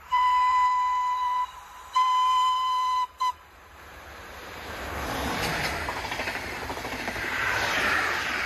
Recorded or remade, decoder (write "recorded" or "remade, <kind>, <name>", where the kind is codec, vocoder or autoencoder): remade, vocoder, BigVGAN v2